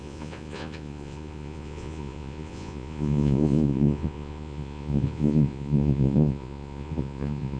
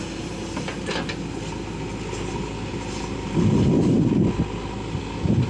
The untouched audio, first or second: second